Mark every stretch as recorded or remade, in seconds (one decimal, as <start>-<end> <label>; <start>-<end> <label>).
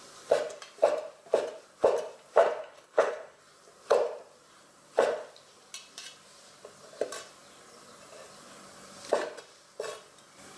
0.0-2.6 recorded; 2.6-3.4 remade; 3.4-10.6 recorded